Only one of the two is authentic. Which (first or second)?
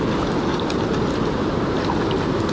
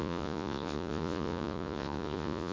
first